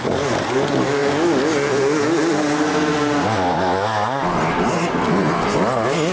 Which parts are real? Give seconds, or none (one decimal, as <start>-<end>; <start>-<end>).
0.0-6.1